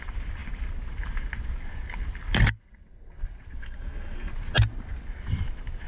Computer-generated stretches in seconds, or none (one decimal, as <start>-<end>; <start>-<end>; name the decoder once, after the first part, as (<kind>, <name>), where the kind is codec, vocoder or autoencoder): 3.6-4.3 (codec, SNAC)